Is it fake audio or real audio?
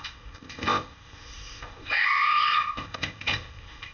fake